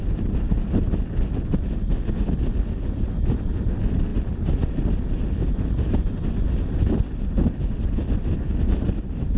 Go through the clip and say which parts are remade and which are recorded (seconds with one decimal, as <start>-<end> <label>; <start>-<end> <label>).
0.0-9.4 recorded